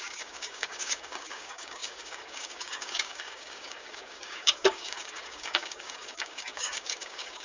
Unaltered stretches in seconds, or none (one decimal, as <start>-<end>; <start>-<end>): none